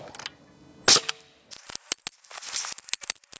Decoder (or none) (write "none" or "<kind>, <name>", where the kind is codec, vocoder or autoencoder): none